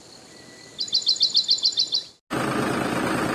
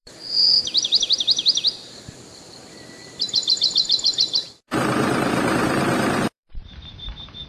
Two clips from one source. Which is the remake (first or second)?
second